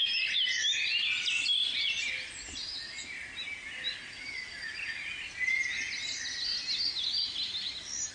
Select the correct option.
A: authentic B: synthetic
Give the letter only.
A